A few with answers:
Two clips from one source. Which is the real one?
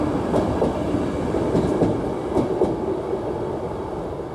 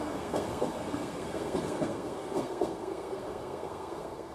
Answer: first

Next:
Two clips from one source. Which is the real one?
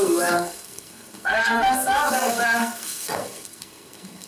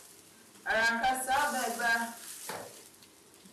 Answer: second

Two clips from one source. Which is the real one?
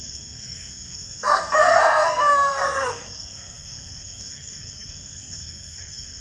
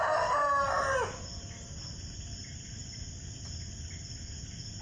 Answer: second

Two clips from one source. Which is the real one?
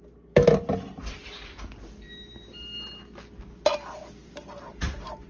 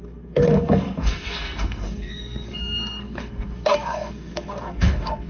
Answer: first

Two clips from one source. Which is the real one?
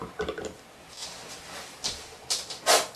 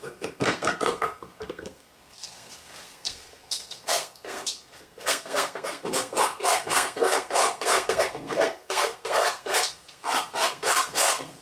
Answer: first